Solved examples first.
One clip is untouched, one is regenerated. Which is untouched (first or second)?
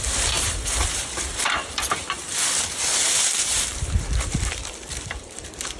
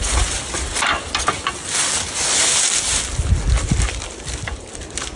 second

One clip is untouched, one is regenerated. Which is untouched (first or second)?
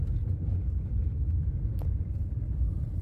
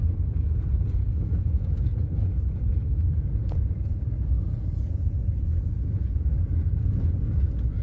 first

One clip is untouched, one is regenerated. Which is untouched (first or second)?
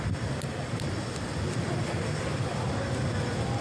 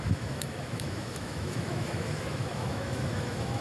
first